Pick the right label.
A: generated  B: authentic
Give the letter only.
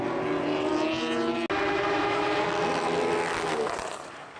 B